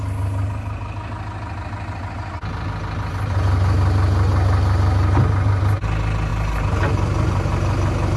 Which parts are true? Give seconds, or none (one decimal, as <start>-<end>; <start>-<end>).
0.0-8.2